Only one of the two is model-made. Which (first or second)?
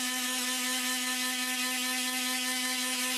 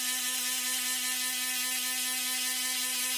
first